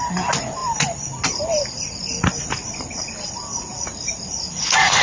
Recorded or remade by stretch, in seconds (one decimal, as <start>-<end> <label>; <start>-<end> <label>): 0.0-0.6 recorded; 0.6-3.3 remade; 3.3-5.0 recorded